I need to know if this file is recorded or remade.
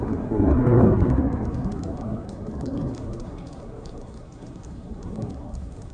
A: remade